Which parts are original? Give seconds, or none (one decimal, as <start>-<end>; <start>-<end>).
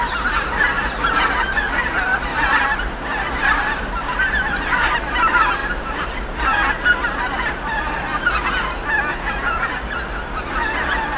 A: 0.0-9.1; 9.7-11.2